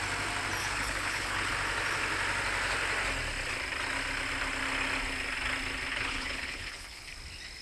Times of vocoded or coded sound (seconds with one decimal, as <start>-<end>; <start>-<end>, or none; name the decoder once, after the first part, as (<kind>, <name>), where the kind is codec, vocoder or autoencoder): 0.6-1.5 (codec, HILCodec); 5.9-7.1